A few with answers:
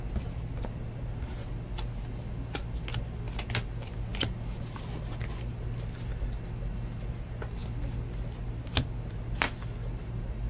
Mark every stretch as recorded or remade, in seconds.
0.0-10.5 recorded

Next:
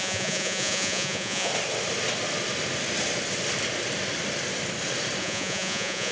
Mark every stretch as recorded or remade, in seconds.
0.0-1.5 remade; 1.5-5.2 recorded; 5.2-6.1 remade

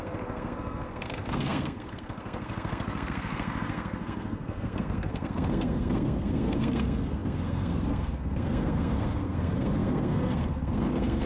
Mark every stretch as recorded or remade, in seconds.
0.0-11.3 remade

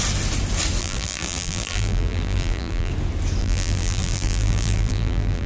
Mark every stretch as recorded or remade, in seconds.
0.0-0.8 recorded; 0.8-2.9 remade; 2.9-3.4 recorded; 3.4-5.5 remade